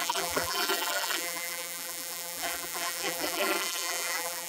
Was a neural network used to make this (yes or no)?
yes